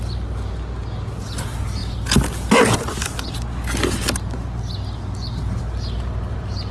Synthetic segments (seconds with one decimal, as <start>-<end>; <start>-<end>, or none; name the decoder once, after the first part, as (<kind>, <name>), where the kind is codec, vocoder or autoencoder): none